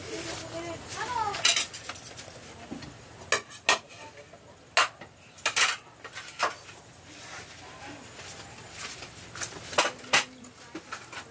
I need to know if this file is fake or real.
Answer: real